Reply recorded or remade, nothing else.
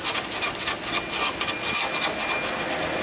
recorded